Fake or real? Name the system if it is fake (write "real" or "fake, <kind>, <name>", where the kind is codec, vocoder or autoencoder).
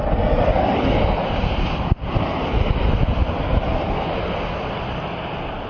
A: real